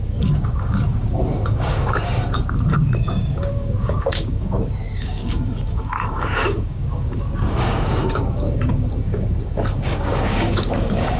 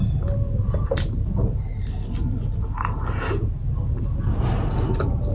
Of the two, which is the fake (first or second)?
first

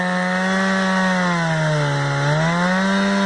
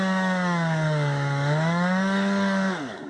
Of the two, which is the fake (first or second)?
second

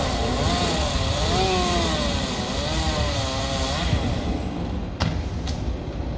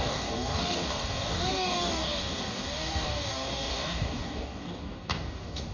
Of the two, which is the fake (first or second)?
second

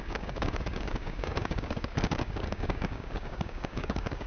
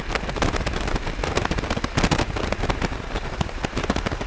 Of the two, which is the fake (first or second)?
first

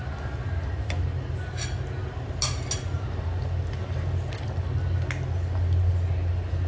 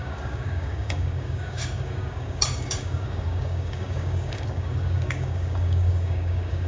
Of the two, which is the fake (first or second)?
second